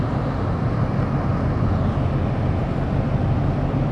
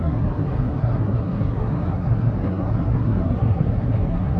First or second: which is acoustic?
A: first